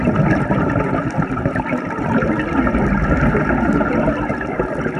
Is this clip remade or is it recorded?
recorded